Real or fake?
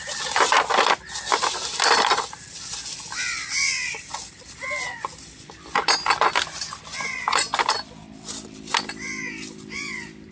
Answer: real